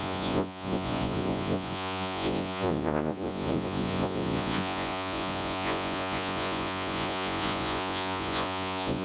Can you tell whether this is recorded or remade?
remade